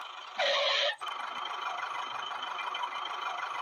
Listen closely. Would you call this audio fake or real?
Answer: real